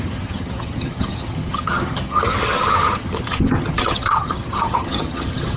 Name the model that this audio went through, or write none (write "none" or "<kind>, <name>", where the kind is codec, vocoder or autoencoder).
vocoder, HiFi-GAN